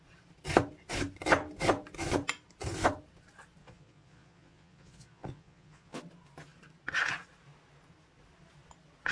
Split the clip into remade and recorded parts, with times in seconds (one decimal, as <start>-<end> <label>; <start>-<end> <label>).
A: 0.0-3.6 recorded; 3.6-6.0 remade; 6.0-9.1 recorded